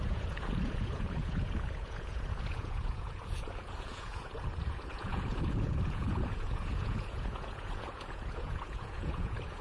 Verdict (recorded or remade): remade